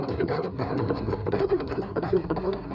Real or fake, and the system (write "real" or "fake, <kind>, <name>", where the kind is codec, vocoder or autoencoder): fake, codec, SNAC